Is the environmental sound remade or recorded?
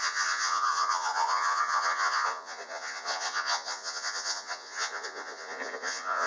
remade